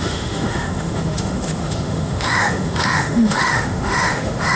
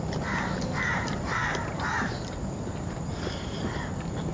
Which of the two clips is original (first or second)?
second